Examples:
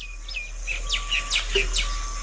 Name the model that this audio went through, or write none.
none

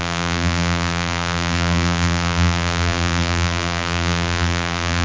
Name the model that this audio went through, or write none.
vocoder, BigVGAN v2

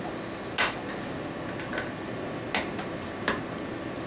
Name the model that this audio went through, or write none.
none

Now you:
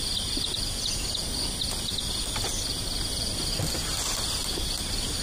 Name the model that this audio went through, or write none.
none